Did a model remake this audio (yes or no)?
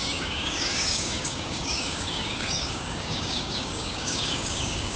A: yes